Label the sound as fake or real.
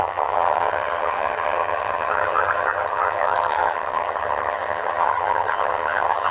fake